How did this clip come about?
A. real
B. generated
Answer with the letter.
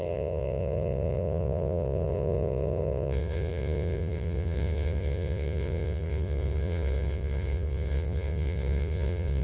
B